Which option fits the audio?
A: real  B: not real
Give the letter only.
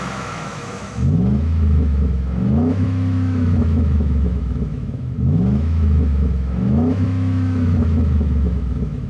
B